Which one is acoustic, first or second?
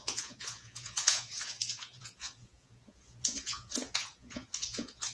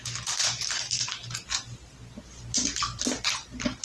second